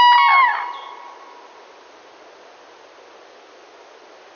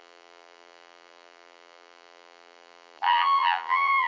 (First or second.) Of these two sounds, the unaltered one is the first